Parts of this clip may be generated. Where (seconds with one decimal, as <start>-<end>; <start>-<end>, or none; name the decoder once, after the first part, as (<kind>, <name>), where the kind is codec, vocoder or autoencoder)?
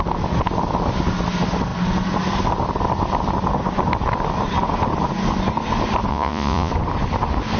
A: 6.1-6.7 (vocoder, Vocos)